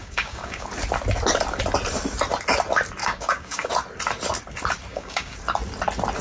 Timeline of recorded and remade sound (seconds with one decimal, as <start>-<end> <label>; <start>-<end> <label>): 0.0-0.7 remade; 0.7-3.0 recorded; 3.0-3.7 remade; 3.7-4.9 recorded; 4.9-5.4 remade; 5.4-6.2 recorded